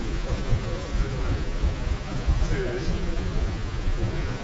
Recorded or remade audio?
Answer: remade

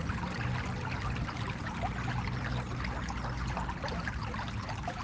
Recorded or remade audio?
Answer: recorded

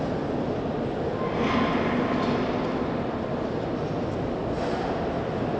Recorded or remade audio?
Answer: recorded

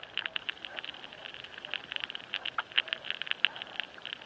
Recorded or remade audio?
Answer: recorded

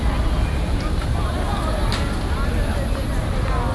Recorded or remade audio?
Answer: recorded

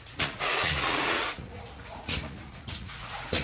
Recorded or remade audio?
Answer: remade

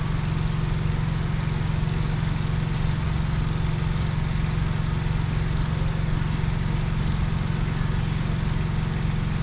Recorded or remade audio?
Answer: recorded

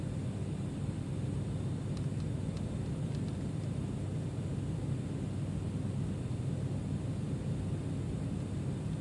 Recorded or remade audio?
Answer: recorded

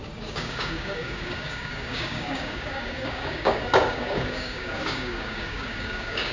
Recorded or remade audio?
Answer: remade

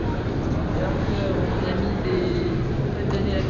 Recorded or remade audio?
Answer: remade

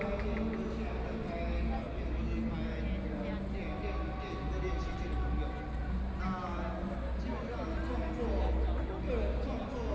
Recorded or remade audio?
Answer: recorded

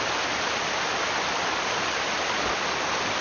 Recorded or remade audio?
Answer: recorded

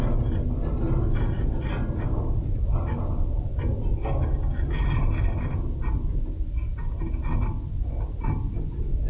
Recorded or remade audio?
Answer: recorded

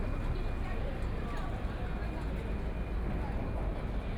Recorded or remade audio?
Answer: recorded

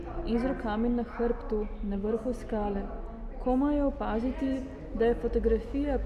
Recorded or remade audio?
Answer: recorded